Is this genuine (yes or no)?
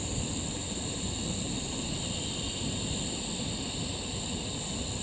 yes